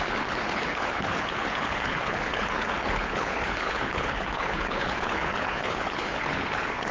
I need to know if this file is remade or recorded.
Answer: remade